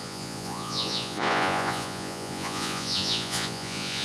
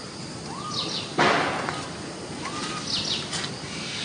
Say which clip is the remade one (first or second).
first